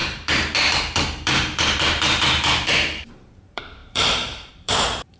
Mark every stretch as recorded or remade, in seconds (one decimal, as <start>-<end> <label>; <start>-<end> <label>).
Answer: 0.0-5.2 remade